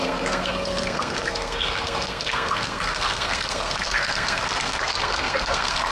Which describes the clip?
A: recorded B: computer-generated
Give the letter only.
B